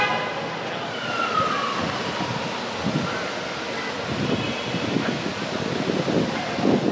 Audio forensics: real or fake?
real